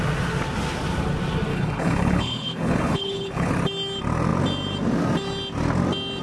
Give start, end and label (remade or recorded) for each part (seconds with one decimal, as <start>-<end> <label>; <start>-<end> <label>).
0.0-1.5 recorded; 1.5-3.5 remade; 3.5-6.2 recorded